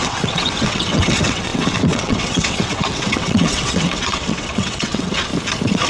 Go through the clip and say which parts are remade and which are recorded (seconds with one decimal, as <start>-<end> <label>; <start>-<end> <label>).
0.0-5.3 remade; 5.3-5.9 recorded